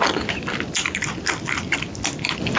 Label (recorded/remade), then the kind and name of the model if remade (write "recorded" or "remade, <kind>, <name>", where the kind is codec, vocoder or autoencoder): recorded